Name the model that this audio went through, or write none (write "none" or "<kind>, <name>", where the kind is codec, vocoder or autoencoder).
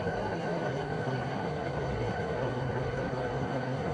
codec, SNAC